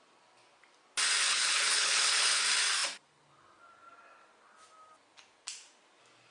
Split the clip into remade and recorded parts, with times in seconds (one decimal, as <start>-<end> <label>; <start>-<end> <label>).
0.0-1.3 recorded; 1.3-2.4 remade; 2.4-6.3 recorded